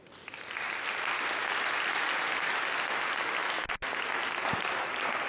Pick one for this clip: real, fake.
real